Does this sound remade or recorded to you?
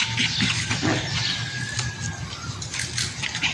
recorded